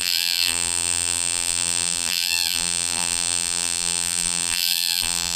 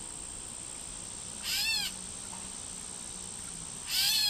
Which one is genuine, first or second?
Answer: second